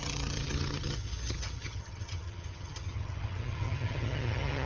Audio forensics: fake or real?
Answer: fake